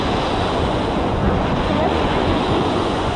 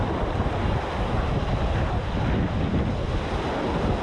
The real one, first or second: second